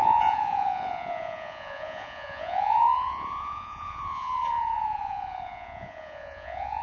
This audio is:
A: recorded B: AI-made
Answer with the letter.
B